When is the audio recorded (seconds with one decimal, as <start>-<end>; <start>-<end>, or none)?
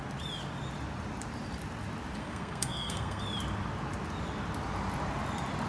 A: 0.0-2.2; 3.2-5.7